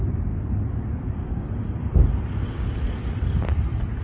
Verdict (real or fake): fake